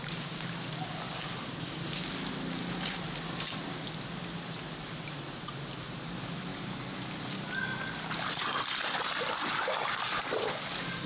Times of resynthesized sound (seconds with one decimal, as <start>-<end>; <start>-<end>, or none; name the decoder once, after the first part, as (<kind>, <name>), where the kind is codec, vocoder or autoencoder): none